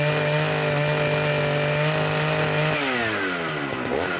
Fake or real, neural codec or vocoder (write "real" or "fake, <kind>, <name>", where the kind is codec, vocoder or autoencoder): real